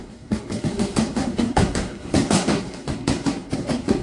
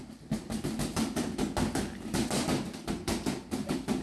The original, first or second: second